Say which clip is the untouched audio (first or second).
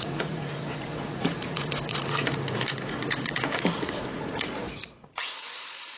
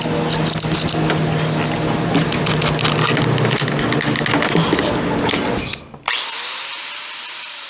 second